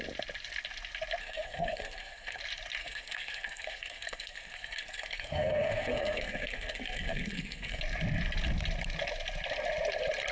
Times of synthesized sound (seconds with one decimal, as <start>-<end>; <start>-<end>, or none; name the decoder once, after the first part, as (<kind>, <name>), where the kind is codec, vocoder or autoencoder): 1.2-2.4 (codec, SNAC); 2.8-7.8